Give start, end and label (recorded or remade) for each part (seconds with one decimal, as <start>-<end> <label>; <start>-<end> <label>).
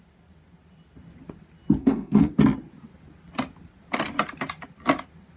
0.0-1.8 recorded; 1.8-2.3 remade; 2.3-5.4 recorded